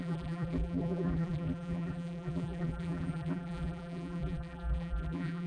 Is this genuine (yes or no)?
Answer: no